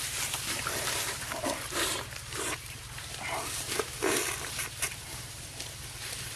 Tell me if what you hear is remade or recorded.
remade